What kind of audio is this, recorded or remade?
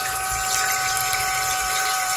remade